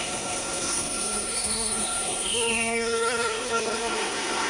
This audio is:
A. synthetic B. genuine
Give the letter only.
A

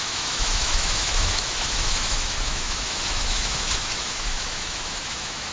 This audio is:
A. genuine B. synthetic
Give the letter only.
B